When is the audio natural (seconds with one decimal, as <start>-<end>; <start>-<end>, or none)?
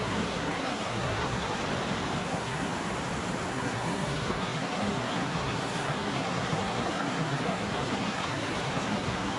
1.6-2.2; 2.7-3.5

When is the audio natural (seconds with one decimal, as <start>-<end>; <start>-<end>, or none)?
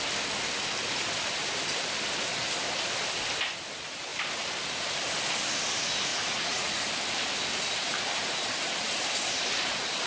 0.0-6.1; 6.9-10.1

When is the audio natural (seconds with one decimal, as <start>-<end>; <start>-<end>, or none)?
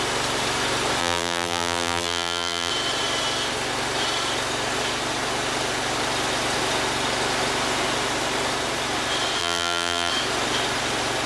0.0-1.0; 2.7-9.4; 10.1-11.3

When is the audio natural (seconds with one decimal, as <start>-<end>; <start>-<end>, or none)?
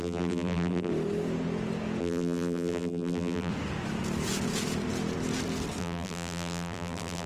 0.9-2.0; 3.5-5.8